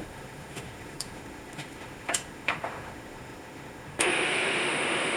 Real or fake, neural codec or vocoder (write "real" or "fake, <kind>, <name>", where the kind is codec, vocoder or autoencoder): fake, autoencoder, DAC-VAE